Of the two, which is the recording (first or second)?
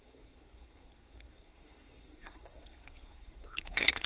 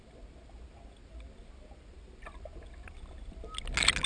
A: second